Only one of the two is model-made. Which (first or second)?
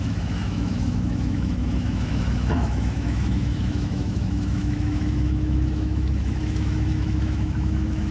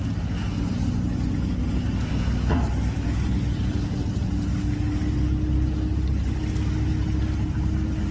first